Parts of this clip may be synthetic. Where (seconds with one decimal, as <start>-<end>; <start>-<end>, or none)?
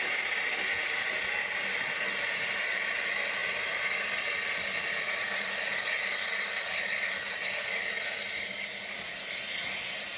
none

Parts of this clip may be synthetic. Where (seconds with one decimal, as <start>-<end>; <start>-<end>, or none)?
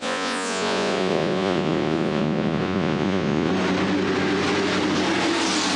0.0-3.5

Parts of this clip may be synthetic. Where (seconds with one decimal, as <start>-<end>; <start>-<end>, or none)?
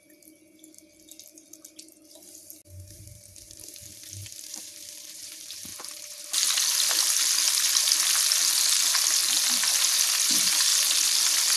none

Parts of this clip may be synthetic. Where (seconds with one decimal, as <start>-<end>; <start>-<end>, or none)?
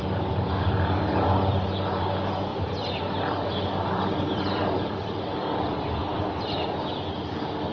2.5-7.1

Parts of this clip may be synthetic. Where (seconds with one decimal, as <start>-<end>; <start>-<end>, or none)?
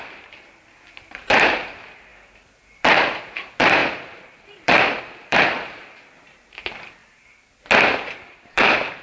0.0-7.0; 8.3-9.0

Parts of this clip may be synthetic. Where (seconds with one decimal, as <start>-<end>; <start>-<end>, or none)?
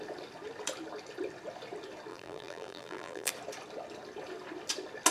2.1-3.3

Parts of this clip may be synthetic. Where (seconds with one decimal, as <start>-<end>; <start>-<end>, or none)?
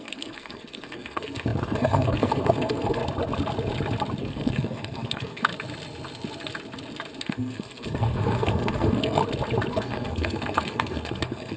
0.0-3.0; 4.2-5.5; 7.2-9.2; 9.7-11.6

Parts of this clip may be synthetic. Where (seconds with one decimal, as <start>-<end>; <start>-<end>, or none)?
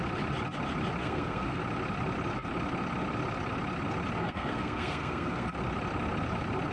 1.0-1.6; 4.2-5.5